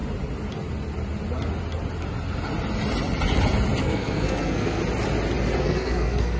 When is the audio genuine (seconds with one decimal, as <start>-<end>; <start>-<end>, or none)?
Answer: 0.0-3.8; 4.8-5.6